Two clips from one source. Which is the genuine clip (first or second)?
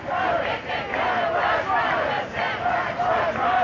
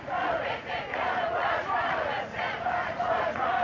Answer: first